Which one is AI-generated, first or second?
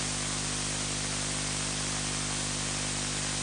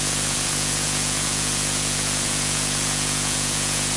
second